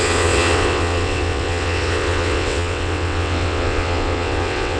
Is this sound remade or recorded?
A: remade